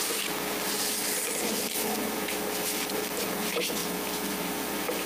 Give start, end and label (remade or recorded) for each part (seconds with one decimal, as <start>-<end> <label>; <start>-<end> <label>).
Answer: 0.0-3.8 recorded; 3.8-5.1 remade